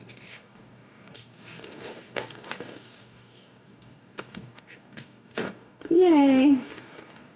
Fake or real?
fake